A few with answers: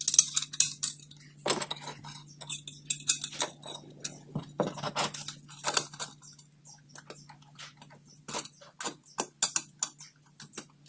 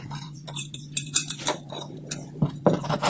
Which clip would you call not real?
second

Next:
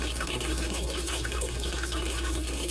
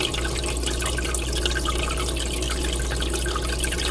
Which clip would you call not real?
first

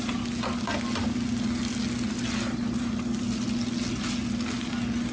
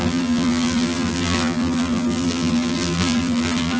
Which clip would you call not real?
second